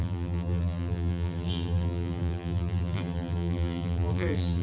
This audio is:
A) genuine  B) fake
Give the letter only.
B